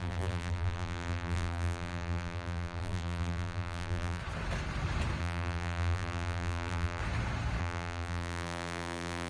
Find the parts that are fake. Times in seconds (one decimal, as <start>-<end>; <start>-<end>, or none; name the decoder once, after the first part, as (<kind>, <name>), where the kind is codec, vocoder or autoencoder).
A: 0.0-4.2 (vocoder, BigVGAN v2); 5.2-7.0; 7.6-9.3